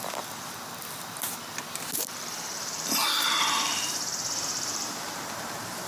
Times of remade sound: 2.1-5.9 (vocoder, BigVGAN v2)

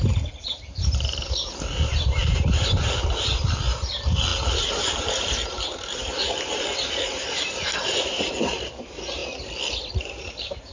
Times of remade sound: 0.0-9.2 (vocoder, BigVGAN v2); 9.9-10.7

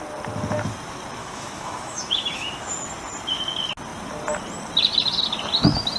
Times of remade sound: 1.2-2.7 (autoencoder, DAC-VAE)